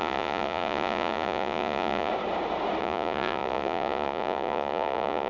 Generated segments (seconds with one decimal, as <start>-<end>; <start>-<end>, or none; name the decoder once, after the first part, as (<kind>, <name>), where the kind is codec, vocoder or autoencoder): 0.0-2.1 (vocoder, Vocos); 2.8-5.3